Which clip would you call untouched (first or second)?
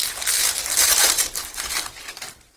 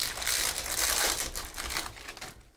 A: second